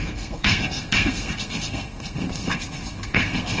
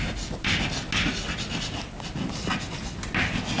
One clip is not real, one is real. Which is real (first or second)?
second